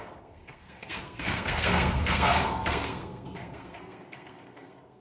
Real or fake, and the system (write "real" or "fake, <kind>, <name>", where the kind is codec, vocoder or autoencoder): fake, codec, SNAC